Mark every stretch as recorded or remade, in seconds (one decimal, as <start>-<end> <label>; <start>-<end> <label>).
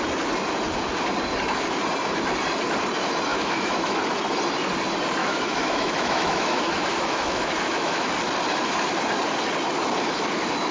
0.0-3.3 recorded; 3.3-4.0 remade; 4.0-5.2 recorded; 5.2-8.1 remade; 8.1-10.7 recorded